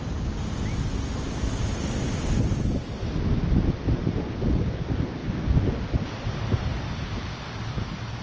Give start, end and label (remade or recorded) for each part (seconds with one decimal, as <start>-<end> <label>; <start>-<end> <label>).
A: 0.0-8.2 recorded